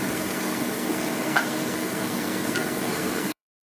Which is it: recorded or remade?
remade